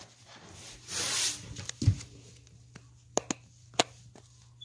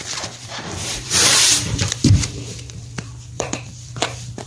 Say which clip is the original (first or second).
first